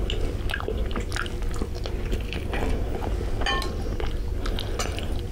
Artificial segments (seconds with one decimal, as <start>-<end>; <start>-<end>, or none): none

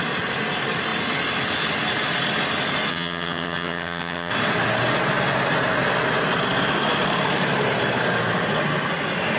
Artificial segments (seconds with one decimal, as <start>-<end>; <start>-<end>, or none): 2.9-4.3

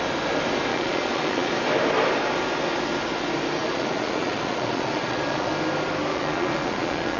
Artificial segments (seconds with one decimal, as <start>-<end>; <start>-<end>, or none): 0.7-1.5; 3.6-5.5; 6.1-7.2

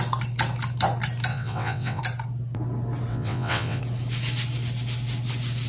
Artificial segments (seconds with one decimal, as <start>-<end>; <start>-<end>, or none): 1.3-2.0; 3.1-3.8

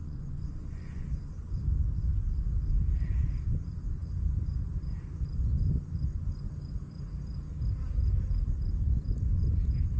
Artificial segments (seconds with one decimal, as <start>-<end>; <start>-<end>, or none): 0.0-1.0

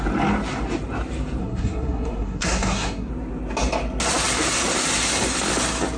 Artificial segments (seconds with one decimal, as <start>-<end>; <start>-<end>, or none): 1.4-3.1

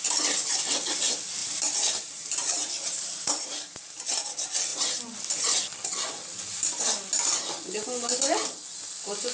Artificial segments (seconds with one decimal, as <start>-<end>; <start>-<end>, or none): 1.4-4.0